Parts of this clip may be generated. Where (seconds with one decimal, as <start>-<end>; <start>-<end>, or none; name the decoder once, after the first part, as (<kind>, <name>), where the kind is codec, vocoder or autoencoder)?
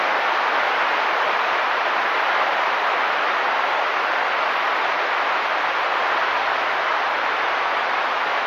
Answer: 6.9-7.8 (vocoder, BigVGAN v2)